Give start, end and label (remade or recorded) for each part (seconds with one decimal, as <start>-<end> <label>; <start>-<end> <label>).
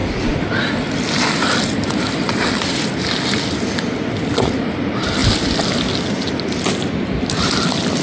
0.0-8.0 recorded